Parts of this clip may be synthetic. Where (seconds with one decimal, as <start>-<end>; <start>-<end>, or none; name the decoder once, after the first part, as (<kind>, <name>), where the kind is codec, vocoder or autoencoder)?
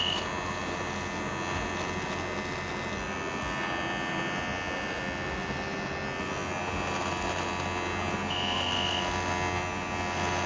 none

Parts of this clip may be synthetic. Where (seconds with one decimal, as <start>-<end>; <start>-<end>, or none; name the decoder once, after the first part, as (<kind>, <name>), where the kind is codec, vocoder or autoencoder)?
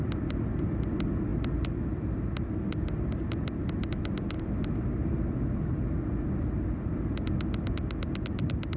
none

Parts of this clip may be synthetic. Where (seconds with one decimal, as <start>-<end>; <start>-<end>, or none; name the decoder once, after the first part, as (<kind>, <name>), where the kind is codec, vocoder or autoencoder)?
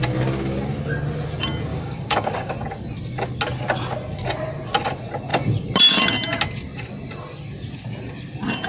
1.7-2.5 (codec, DAC)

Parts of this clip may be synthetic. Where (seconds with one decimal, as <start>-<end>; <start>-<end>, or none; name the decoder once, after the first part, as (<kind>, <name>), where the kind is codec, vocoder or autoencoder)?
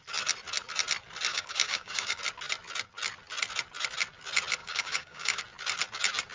1.3-2.2 (codec, DAC); 4.6-5.4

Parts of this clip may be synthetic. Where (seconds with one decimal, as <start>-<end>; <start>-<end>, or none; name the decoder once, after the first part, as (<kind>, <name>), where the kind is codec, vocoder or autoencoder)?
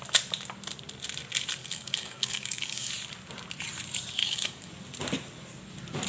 1.6-2.9 (codec, DAC); 4.2-4.7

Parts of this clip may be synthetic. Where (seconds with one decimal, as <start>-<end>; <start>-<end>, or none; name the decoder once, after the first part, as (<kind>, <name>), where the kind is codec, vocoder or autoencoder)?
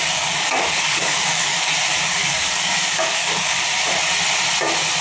0.0-1.7 (codec, DAC); 2.2-3.6